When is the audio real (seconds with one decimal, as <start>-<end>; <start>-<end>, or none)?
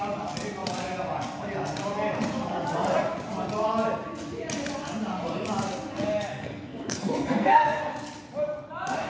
0.0-6.3; 7.9-9.1